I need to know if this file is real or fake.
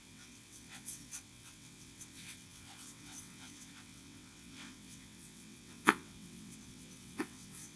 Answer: fake